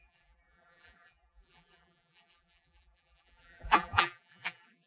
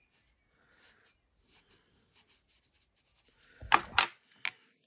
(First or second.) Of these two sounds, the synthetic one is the first